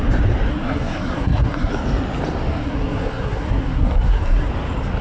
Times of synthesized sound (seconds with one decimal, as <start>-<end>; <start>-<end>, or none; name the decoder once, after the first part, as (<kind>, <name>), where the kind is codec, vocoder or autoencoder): 0.5-1.7 (codec, SNAC); 2.5-4.5